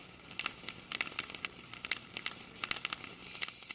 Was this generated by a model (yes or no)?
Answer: no